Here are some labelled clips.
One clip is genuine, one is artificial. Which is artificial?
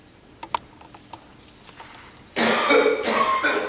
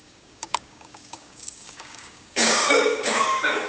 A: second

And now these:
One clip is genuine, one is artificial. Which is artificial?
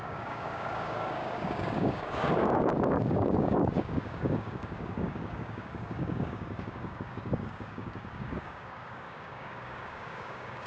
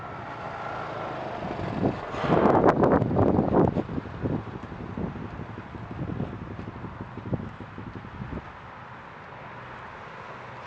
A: first